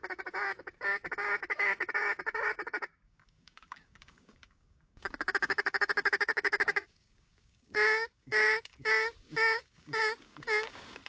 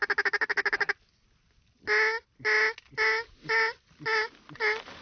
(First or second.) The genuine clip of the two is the second